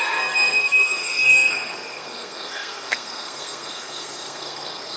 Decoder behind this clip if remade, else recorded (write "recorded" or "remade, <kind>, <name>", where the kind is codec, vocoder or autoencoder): remade, codec, SNAC